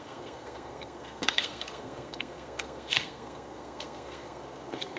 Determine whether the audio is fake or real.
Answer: fake